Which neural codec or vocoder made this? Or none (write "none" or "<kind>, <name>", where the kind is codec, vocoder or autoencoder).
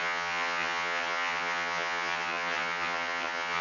vocoder, HiFi-GAN